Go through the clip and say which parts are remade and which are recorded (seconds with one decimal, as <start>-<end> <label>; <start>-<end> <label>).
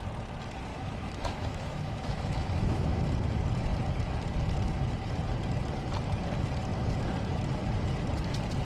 0.0-0.7 recorded; 0.7-3.0 remade; 3.0-8.6 recorded